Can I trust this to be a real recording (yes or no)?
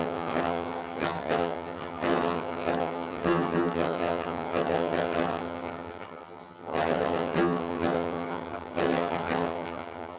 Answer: no